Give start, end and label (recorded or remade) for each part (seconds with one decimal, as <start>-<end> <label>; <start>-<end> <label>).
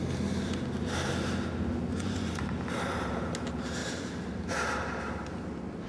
0.0-1.9 recorded; 1.9-2.4 remade; 2.4-5.9 recorded